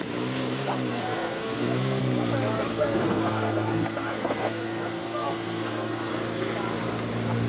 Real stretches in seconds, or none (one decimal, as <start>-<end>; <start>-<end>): 0.0-0.9; 2.0-2.7; 6.1-7.5